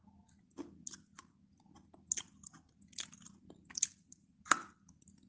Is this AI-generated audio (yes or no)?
no